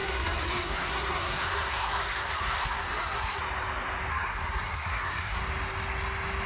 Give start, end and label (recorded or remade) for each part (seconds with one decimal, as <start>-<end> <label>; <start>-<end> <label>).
0.0-3.4 remade; 3.4-4.1 recorded; 4.1-5.4 remade; 5.4-6.5 recorded